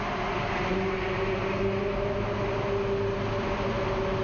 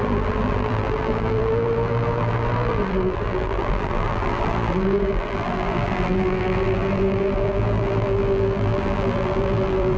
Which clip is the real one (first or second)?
first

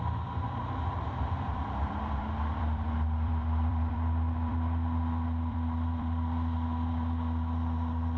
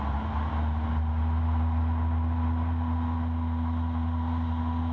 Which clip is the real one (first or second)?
second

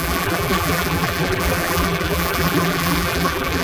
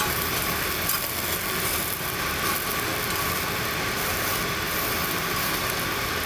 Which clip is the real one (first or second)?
second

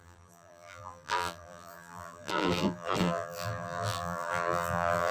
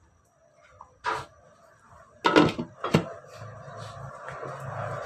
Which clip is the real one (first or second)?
second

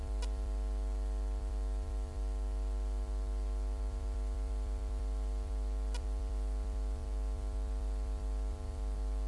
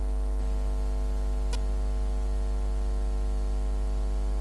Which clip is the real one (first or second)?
second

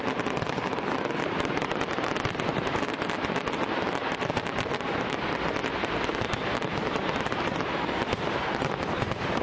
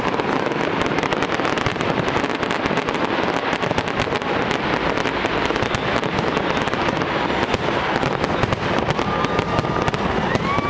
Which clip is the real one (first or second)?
second